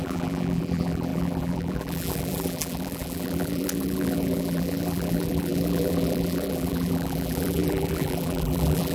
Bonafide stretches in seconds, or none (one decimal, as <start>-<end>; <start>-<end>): none